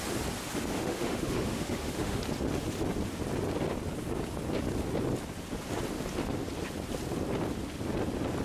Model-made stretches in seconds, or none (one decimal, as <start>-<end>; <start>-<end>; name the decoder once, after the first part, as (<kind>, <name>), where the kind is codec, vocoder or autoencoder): 0.7-2.2 (autoencoder, DAC-VAE)